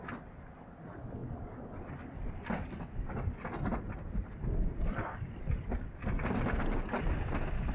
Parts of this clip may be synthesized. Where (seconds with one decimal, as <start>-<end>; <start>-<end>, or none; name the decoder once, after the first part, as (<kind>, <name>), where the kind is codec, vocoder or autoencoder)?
none